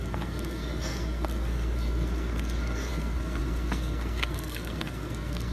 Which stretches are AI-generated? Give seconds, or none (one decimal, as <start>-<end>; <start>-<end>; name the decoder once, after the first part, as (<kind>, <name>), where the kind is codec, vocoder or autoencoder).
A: 0.0-5.5 (codec, SNAC)

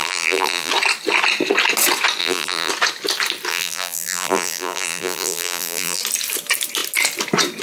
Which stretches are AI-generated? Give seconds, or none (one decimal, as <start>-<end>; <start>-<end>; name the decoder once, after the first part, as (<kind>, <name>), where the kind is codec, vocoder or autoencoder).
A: 0.0-0.7 (vocoder, BigVGAN v2); 2.2-2.7; 3.5-6.0

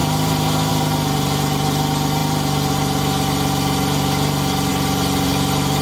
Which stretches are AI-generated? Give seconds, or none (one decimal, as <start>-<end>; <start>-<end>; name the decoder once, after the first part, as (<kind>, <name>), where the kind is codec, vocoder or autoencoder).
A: none

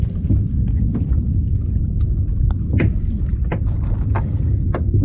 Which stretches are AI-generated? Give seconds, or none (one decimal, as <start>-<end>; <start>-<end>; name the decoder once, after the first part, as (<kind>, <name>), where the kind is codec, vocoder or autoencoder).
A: none

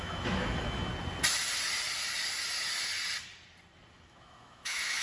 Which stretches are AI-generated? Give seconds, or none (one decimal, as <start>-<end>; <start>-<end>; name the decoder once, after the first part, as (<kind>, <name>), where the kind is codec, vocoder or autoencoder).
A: 0.0-0.9 (autoencoder, DAC-VAE); 3.9-5.0

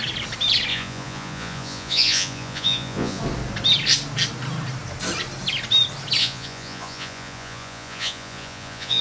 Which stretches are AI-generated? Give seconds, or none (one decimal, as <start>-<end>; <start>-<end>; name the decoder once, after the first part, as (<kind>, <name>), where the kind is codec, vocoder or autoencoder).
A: 0.7-3.2 (vocoder, Vocos); 6.2-9.0

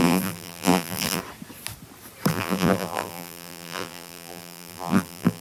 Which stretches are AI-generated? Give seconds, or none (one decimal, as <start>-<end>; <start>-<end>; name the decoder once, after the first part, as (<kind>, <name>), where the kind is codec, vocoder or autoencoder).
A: 0.0-1.2 (vocoder, BigVGAN v2); 2.3-5.4

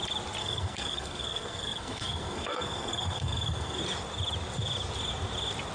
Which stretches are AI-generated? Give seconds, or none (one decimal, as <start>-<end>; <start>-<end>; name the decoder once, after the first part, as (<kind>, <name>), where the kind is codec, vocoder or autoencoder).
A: 0.4-3.8 (codec, SNAC)